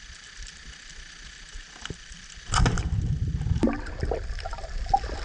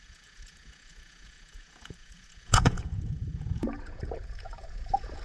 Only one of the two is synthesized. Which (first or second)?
second